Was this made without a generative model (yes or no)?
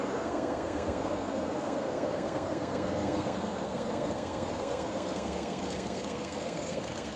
no